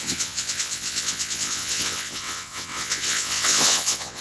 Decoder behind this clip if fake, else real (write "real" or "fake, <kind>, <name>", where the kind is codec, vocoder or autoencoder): fake, vocoder, WaveNeXt